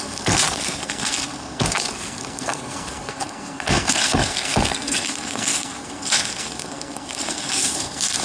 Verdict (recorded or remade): remade